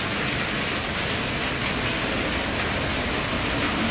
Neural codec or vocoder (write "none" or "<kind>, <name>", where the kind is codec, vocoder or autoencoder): none